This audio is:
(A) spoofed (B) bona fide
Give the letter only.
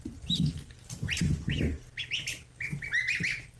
B